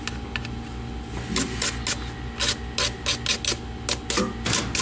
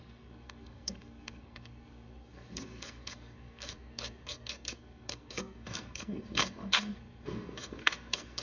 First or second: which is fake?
second